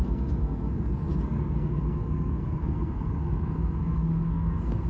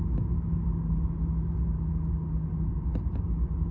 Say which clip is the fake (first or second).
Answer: first